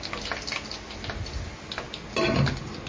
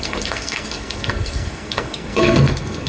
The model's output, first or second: second